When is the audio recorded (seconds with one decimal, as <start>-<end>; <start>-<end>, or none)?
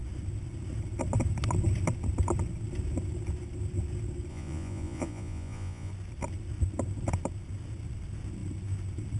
0.0-4.3; 5.9-9.2